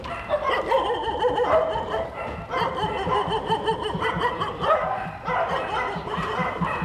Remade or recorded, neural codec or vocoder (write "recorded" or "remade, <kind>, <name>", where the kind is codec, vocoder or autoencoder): recorded